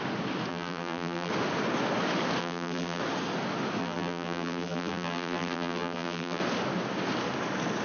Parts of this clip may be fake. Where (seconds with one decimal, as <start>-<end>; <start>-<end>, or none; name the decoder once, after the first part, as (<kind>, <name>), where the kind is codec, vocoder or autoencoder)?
0.5-1.3 (vocoder, BigVGAN v2); 2.4-3.0; 3.8-6.4